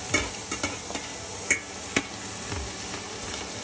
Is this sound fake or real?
real